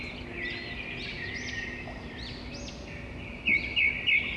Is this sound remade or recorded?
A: remade